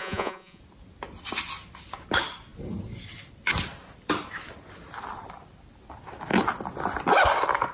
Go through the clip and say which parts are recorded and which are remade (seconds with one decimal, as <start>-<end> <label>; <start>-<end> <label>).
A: 0.0-0.6 remade; 0.6-7.7 recorded